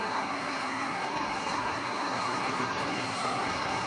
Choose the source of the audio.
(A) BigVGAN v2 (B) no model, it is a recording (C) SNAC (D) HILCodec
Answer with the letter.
C